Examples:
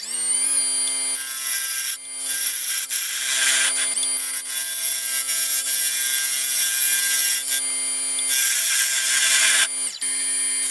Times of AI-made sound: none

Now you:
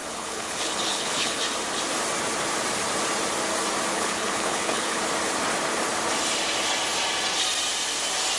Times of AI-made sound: 0.0-1.4; 3.9-5.0

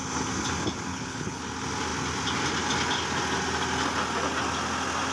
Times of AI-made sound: 0.9-1.4

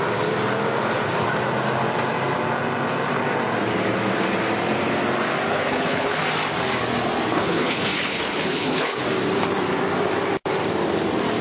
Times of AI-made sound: 5.5-6.2; 7.3-9.0